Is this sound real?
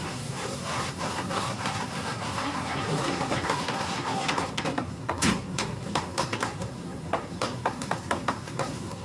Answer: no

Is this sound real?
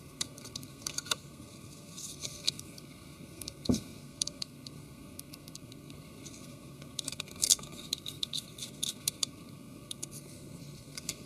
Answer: no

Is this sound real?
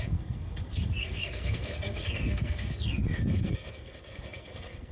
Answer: no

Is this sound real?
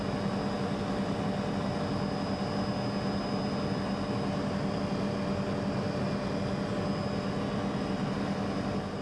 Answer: yes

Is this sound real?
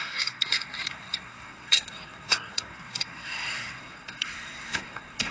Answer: no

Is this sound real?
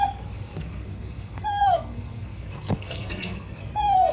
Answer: no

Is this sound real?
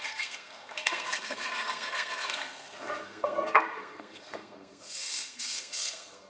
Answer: no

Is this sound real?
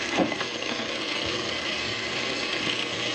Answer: no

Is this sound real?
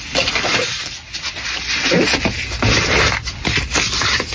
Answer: yes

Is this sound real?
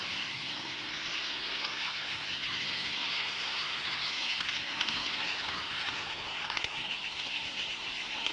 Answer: no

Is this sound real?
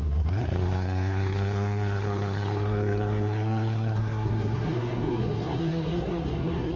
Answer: no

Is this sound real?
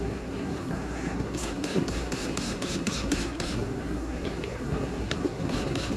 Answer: no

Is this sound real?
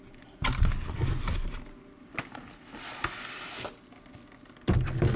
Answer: yes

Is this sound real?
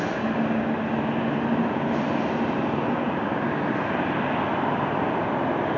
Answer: yes